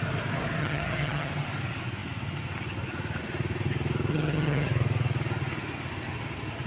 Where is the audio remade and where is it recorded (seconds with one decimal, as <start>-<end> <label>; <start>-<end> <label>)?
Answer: 0.0-0.6 recorded; 0.6-1.3 remade; 1.3-4.1 recorded; 4.1-4.7 remade; 4.7-6.7 recorded